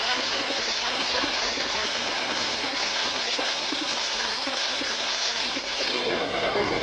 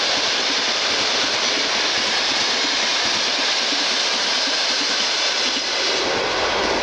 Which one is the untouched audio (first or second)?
second